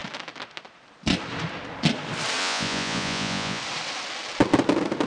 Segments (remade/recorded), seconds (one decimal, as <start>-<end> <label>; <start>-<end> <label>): 0.0-2.4 recorded; 2.4-3.6 remade; 3.6-5.1 recorded